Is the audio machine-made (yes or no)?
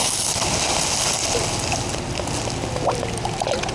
no